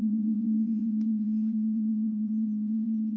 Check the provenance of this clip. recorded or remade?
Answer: remade